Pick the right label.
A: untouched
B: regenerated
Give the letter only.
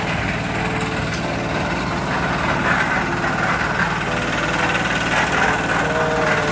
A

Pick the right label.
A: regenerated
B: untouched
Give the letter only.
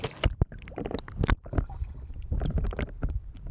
B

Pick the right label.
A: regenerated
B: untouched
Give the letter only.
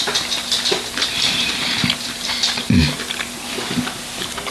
B